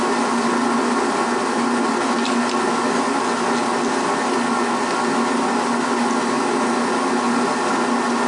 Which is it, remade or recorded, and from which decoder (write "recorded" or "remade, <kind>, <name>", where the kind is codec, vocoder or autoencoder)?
recorded